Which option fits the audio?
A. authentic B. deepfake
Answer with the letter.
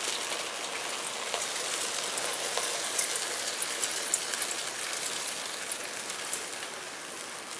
A